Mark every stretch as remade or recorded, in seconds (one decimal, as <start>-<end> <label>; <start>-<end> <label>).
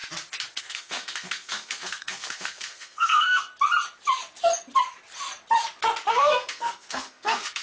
0.0-0.6 recorded; 0.6-3.5 remade; 3.5-6.1 recorded; 6.1-7.6 remade